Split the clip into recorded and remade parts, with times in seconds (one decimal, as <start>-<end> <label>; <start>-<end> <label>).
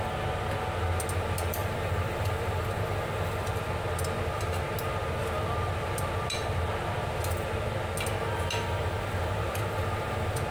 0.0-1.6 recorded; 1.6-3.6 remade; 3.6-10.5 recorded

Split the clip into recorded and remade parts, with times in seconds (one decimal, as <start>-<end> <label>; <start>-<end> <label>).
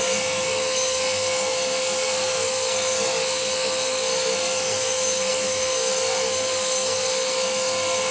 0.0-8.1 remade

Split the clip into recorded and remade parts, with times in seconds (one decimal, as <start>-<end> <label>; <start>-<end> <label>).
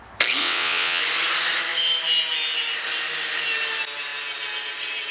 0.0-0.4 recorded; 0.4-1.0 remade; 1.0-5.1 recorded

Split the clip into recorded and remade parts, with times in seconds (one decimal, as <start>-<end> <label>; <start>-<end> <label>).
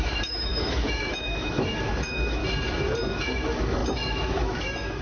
0.0-2.4 remade; 2.4-3.1 recorded; 3.1-5.0 remade